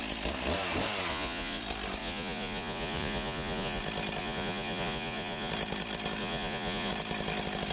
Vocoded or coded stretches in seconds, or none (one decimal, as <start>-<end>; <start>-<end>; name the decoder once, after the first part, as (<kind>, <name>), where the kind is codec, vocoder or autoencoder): 1.1-1.6 (vocoder, Vocos); 2.0-3.8; 4.2-5.5; 6.2-6.9